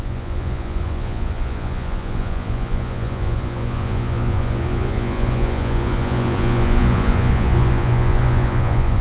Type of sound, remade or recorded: remade